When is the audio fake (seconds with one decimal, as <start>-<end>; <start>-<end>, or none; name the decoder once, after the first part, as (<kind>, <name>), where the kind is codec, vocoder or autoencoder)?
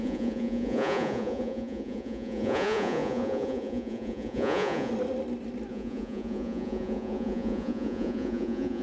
0.0-4.9 (vocoder, Vocos); 5.7-8.8